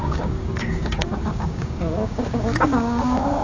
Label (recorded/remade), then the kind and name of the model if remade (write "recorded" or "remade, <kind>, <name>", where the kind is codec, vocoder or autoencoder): remade, codec, DAC